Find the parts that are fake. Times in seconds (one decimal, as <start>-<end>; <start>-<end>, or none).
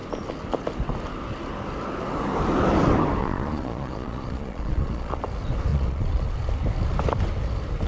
3.2-5.2; 5.7-6.3